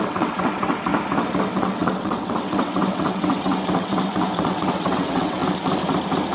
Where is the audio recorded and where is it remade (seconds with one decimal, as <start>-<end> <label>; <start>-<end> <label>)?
0.0-0.9 remade; 0.9-1.4 recorded; 1.4-5.4 remade; 5.4-6.3 recorded